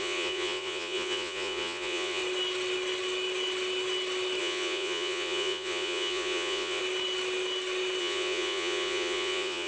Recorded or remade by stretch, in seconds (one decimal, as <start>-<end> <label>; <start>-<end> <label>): 0.0-2.2 remade; 2.2-4.4 recorded; 4.4-6.8 remade; 6.8-8.0 recorded; 8.0-9.7 remade